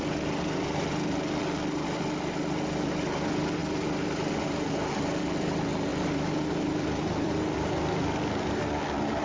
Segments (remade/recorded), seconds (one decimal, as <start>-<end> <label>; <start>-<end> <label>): 0.0-5.9 recorded; 5.9-9.2 remade